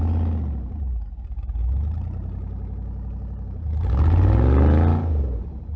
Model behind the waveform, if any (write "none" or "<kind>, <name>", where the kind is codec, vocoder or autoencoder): none